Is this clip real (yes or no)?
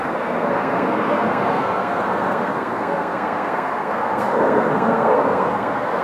no